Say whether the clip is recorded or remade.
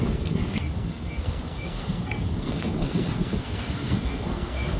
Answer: remade